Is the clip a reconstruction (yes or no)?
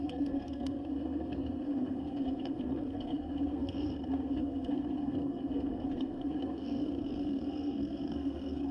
yes